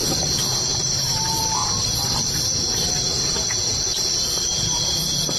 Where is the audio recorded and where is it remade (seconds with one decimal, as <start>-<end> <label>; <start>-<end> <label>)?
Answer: 0.0-1.2 remade; 1.2-5.4 recorded